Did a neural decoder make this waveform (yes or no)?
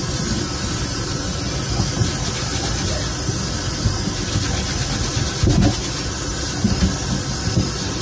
no